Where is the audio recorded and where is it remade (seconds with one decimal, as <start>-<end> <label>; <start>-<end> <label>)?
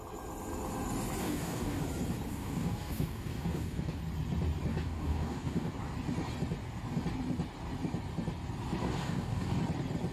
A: 0.0-1.2 recorded; 1.2-1.8 remade; 1.8-2.3 recorded; 2.3-4.0 remade; 4.0-4.7 recorded; 4.7-5.7 remade; 5.7-8.8 recorded; 8.8-9.6 remade; 9.6-10.1 recorded